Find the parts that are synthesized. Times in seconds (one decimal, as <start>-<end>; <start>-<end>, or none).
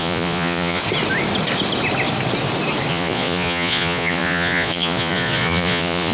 0.0-0.8; 2.9-6.1